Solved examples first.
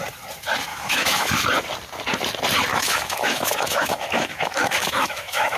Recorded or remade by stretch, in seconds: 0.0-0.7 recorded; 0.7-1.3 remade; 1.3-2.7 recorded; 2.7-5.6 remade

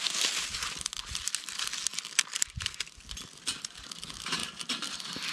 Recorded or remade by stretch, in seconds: 0.0-5.3 recorded

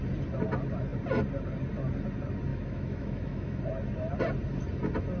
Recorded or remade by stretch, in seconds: 0.0-2.5 recorded; 2.5-3.6 remade; 3.6-5.2 recorded

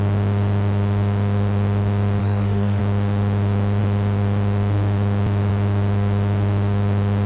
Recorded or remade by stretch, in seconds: 0.0-2.2 recorded; 2.2-2.8 remade; 2.8-7.3 recorded

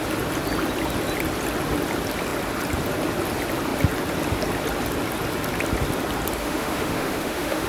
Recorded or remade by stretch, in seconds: 0.0-6.4 recorded; 6.4-7.7 remade